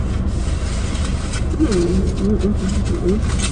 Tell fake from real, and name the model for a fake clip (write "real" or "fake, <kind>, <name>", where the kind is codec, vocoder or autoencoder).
real